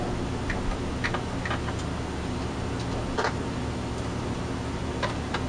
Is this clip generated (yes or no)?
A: no